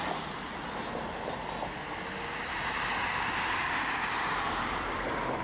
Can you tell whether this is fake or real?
real